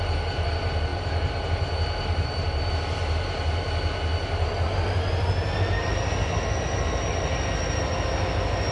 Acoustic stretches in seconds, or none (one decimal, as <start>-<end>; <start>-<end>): 0.0-0.9; 2.7-8.7